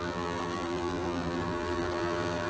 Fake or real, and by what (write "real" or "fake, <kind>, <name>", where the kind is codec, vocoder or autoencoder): fake, vocoder, BigVGAN v2